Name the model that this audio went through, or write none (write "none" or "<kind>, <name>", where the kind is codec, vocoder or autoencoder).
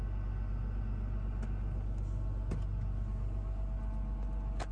none